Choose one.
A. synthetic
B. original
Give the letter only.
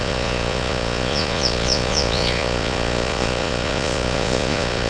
A